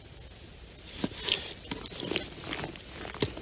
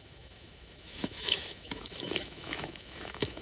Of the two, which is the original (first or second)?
first